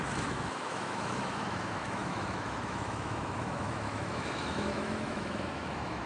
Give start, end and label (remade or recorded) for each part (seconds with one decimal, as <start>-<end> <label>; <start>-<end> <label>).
0.0-6.1 remade